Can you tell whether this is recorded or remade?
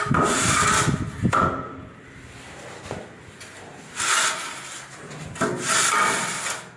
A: recorded